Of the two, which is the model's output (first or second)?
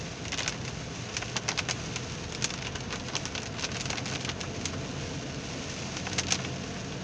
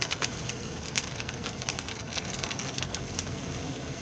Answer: second